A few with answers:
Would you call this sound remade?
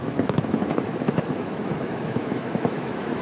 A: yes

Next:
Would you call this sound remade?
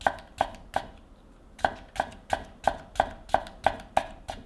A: no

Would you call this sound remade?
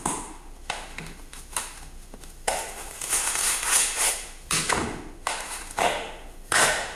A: yes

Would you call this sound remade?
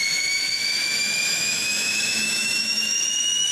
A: yes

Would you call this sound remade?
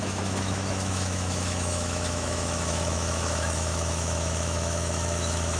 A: yes